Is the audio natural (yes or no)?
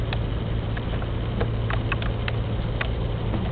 yes